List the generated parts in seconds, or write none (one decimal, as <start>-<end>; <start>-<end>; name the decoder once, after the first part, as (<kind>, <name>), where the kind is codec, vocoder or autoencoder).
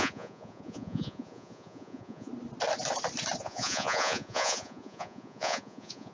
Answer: 0.0-2.3 (vocoder, Vocos); 3.4-6.1